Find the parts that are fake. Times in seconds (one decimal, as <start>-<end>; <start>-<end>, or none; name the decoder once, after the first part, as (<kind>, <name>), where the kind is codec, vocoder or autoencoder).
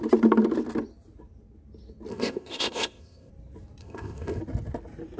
2.1-3.3 (codec, ZipCodec); 3.8-4.4